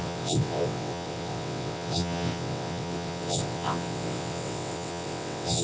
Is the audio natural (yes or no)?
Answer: no